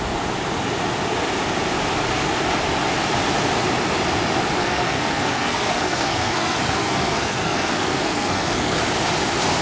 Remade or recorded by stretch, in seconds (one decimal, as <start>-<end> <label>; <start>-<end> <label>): 0.0-4.6 recorded; 4.6-8.8 remade; 8.8-9.6 recorded